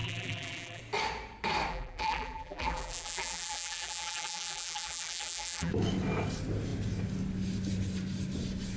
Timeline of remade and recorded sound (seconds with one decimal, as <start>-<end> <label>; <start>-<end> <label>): 0.0-0.8 remade; 0.8-1.7 recorded; 1.7-5.7 remade; 5.7-8.8 recorded